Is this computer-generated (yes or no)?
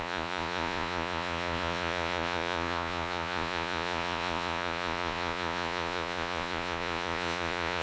yes